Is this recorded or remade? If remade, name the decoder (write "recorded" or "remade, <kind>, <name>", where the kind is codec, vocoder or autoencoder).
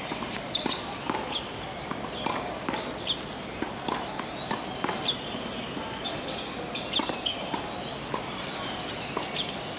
recorded